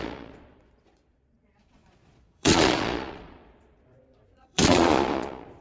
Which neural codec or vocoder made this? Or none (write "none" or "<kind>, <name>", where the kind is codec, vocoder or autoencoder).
vocoder, Vocos